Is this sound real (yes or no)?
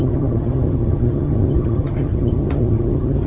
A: no